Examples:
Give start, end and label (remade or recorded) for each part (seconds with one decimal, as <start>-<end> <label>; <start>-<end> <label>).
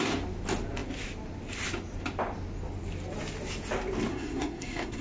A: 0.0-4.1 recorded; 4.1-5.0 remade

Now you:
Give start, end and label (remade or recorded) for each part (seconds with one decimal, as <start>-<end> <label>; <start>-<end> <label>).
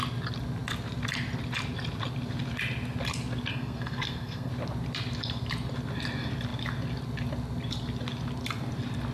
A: 0.0-3.5 recorded; 3.5-4.5 remade; 4.5-9.1 recorded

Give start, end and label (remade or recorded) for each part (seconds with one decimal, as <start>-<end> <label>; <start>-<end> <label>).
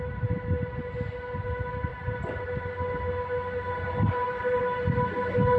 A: 0.0-5.6 recorded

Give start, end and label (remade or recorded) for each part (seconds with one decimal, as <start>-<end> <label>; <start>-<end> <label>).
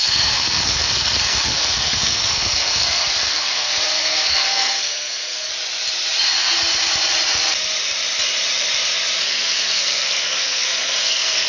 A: 0.0-5.5 remade; 5.5-9.2 recorded; 9.2-11.5 remade